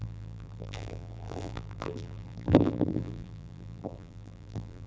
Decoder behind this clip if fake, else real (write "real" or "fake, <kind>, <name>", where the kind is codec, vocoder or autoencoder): fake, vocoder, BigVGAN v2